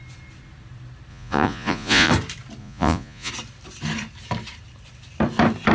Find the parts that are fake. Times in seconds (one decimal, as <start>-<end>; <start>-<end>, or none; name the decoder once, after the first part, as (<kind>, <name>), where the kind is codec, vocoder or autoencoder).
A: 1.1-2.1 (vocoder, Vocos); 2.6-3.3